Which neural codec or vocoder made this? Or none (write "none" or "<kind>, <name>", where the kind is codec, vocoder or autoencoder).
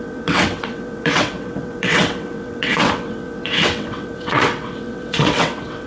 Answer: vocoder, WaveNeXt